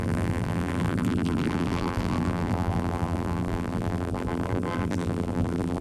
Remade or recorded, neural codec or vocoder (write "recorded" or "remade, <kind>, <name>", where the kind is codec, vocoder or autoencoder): remade, vocoder, BigVGAN v2